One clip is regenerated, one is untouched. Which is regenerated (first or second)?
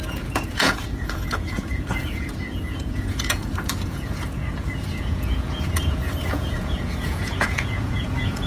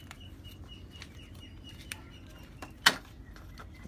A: first